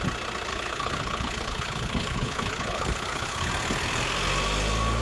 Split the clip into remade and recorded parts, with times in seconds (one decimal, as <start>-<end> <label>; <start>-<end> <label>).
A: 0.0-0.5 recorded; 0.5-3.5 remade; 3.5-5.0 recorded